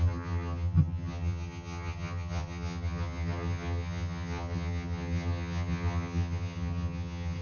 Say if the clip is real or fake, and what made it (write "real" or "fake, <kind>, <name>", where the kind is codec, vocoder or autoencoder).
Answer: fake, vocoder, HiFi-GAN